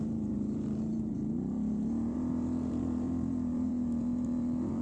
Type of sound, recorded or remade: remade